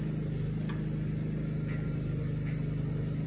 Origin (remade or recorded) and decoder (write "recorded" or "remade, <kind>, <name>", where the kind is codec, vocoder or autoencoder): recorded